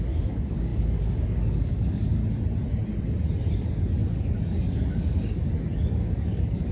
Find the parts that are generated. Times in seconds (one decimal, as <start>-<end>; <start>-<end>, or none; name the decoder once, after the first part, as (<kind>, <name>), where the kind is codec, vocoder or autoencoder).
0.0-2.2 (codec, DAC); 3.5-6.7